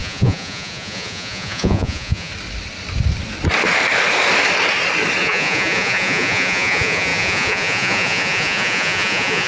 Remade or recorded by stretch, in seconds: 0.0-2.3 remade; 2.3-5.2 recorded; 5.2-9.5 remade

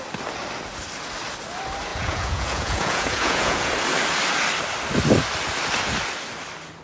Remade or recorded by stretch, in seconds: 0.0-1.9 recorded; 1.9-3.7 remade; 3.7-6.8 recorded

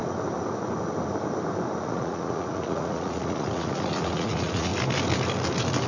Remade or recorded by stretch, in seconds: 0.0-1.8 recorded; 1.8-4.7 remade; 4.7-5.9 recorded